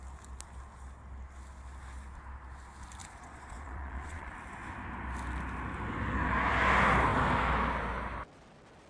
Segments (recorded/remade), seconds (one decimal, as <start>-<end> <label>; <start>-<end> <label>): 0.0-3.0 recorded; 3.0-4.3 remade; 4.3-8.9 recorded